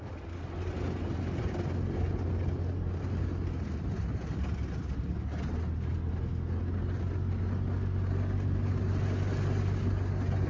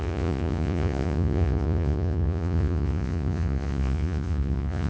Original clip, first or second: first